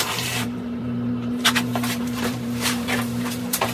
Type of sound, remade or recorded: remade